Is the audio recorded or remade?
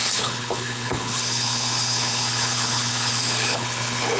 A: remade